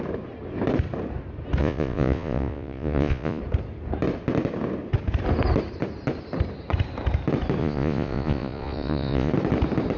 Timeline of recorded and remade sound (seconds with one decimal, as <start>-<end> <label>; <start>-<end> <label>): 0.0-1.6 recorded; 1.6-3.4 remade; 3.4-7.6 recorded; 7.6-9.3 remade; 9.3-10.0 recorded